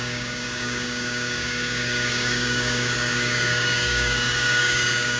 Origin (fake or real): fake